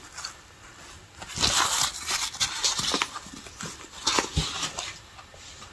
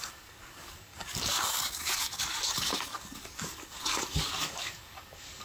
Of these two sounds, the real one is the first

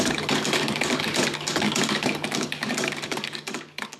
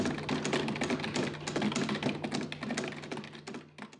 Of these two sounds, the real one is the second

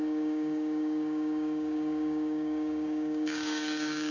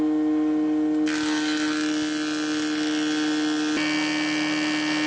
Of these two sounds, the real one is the second